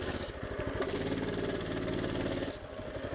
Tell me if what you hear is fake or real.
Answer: real